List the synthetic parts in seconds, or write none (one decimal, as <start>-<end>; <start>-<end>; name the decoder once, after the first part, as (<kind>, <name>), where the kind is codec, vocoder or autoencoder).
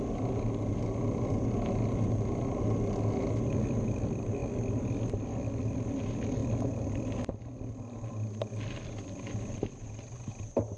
none